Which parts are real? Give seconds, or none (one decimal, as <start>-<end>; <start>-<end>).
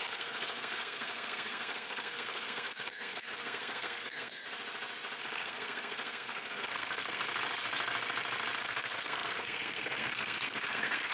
4.4-5.2; 7.2-8.6